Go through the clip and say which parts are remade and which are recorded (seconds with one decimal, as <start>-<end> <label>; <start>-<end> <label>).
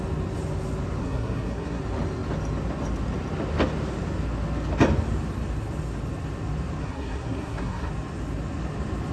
0.0-1.0 recorded; 1.0-1.8 remade; 1.8-6.8 recorded; 6.8-7.9 remade; 7.9-9.1 recorded